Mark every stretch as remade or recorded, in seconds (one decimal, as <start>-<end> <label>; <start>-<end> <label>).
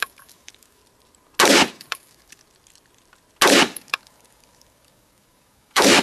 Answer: 0.0-0.8 remade; 0.8-1.7 recorded; 1.7-2.4 remade; 2.4-3.6 recorded; 3.6-6.0 remade